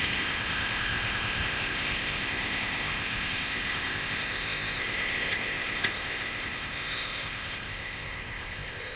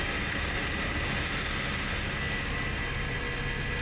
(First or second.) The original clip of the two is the second